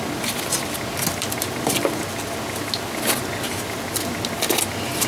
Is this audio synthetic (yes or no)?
no